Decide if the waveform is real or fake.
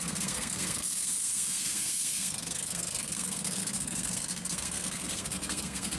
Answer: fake